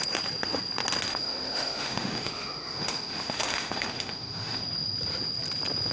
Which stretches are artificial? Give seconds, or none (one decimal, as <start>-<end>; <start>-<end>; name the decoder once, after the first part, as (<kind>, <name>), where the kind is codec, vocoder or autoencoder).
1.1-4.6 (autoencoder, DAC-VAE)